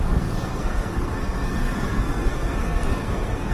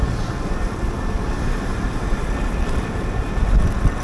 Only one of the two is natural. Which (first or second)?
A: second